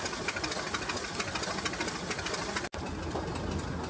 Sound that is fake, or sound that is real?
real